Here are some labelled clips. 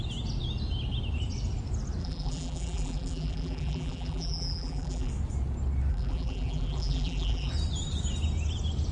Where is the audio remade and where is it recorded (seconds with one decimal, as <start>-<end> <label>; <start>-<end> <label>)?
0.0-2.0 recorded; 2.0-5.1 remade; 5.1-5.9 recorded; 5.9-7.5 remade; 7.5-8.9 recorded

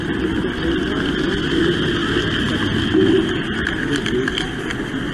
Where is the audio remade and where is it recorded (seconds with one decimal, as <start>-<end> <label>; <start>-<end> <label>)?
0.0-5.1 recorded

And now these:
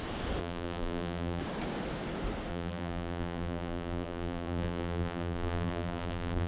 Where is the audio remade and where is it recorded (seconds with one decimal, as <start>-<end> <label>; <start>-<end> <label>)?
0.0-0.4 recorded; 0.4-1.4 remade; 1.4-2.5 recorded; 2.5-6.5 remade